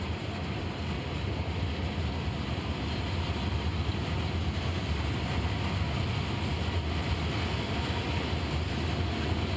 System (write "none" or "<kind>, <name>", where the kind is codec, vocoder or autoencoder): none